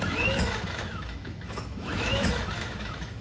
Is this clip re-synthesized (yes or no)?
yes